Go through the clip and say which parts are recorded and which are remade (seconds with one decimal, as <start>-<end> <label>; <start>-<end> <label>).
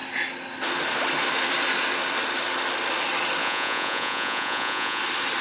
0.0-3.4 recorded; 3.4-5.0 remade; 5.0-5.4 recorded